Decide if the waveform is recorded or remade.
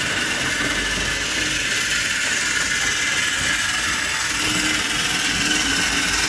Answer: recorded